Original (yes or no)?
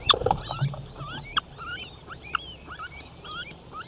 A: no